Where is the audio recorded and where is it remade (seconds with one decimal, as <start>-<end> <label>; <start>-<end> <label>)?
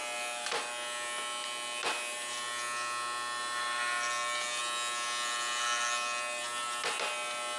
0.0-7.6 recorded